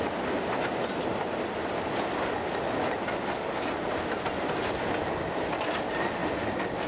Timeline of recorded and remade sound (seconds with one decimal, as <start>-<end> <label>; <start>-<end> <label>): 0.0-6.9 recorded